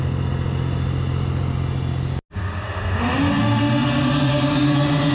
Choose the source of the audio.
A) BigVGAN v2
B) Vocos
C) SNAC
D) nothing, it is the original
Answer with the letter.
D